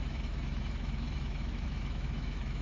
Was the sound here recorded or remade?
remade